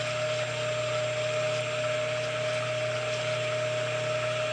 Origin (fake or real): real